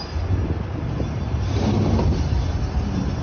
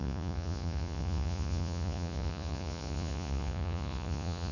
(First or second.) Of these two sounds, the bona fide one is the first